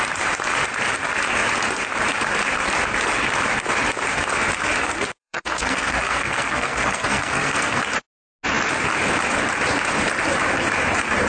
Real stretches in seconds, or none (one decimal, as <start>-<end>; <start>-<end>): 0.0-5.2; 7.8-11.3